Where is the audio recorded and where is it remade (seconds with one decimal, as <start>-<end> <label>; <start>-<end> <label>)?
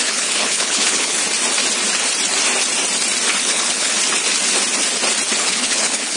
0.0-1.2 remade; 1.2-3.4 recorded; 3.4-3.9 remade; 3.9-5.4 recorded; 5.4-6.2 remade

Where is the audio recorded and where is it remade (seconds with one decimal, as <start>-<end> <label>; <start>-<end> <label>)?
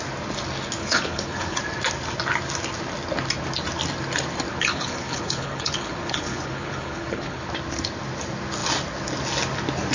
0.0-0.8 recorded; 0.8-1.6 remade; 1.6-4.5 recorded; 4.5-7.5 remade; 7.5-9.9 recorded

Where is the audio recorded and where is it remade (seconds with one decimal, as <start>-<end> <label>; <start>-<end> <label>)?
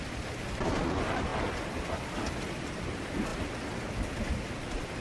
0.0-5.0 recorded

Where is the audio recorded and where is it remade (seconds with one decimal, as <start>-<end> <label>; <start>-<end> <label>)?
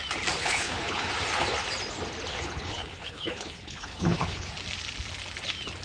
0.0-0.4 recorded; 0.4-1.1 remade; 1.1-2.3 recorded; 2.3-4.5 remade; 4.5-5.8 recorded